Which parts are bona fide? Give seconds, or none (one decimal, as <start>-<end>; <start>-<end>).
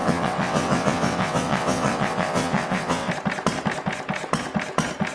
3.1-5.1